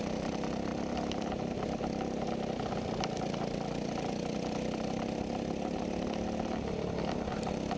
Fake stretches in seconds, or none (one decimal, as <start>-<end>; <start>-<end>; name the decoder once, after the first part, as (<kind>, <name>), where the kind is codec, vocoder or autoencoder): none